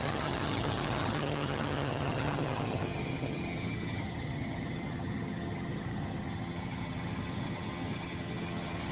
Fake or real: fake